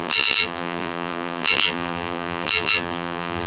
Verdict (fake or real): fake